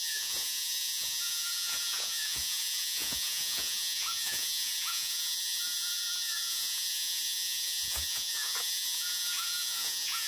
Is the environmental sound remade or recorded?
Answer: remade